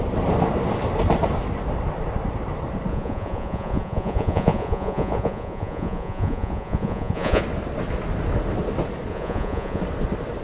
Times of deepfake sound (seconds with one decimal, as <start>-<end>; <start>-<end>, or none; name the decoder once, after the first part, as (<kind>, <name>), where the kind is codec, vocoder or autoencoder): 2.9-7.4 (vocoder, Vocos); 9.1-9.8